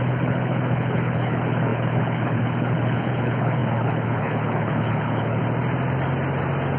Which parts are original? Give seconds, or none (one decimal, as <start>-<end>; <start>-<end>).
5.4-6.8